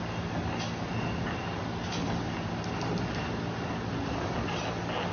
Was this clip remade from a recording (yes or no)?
no